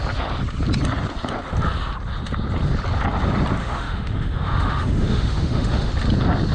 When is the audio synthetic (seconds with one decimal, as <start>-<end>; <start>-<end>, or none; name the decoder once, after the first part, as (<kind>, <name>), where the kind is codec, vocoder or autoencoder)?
3.6-5.9 (autoencoder, DAC-VAE)